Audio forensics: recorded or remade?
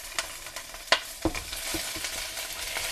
recorded